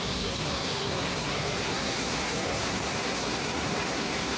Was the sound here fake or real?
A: fake